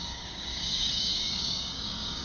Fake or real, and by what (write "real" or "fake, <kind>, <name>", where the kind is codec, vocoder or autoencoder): fake, codec, DAC